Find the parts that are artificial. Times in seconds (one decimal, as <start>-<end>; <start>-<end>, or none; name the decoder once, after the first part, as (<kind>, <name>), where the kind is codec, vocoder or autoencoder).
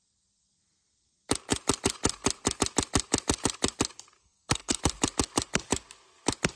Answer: 4.2-4.8 (codec, SNAC)